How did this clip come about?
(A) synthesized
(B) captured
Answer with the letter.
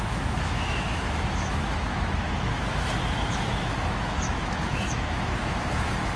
A